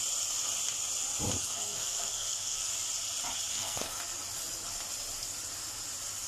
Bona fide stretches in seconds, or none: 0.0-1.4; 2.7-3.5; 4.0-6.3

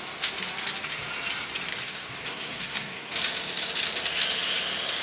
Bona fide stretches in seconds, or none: 0.0-1.8; 3.1-5.0

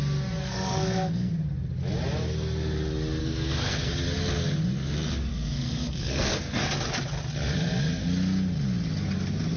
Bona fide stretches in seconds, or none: 0.0-0.4; 1.3-3.2; 3.9-5.3; 6.6-9.6